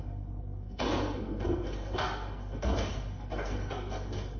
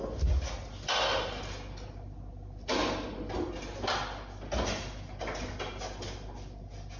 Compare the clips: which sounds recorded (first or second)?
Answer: second